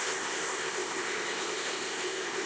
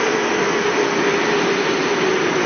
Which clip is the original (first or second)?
second